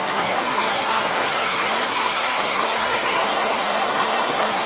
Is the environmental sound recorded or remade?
remade